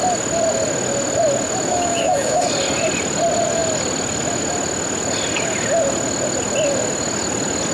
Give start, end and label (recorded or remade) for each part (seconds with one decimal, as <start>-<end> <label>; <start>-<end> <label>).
0.0-1.7 recorded; 1.7-2.4 remade; 2.4-7.7 recorded